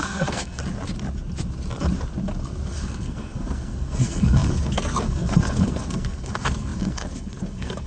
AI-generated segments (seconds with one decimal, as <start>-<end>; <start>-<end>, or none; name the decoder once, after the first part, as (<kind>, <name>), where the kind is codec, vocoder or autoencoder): 0.0-0.6 (codec, SNAC); 2.7-7.9